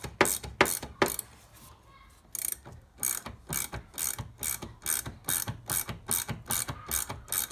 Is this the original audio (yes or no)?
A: yes